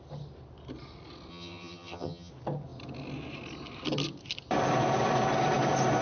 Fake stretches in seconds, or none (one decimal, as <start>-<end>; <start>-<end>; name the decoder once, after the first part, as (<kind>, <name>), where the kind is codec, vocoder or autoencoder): 1.3-2.3 (vocoder, HiFi-GAN)